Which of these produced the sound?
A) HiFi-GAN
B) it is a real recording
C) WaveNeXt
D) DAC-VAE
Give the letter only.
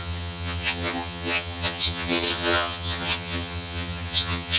A